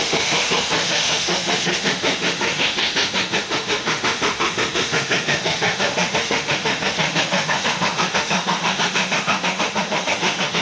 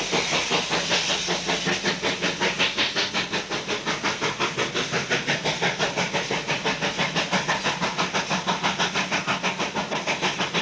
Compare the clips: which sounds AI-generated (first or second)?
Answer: first